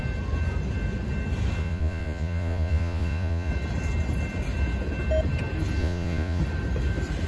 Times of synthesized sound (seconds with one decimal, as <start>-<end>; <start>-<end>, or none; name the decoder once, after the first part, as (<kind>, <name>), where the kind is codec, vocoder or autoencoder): 1.6-3.5 (vocoder, Vocos); 5.8-6.4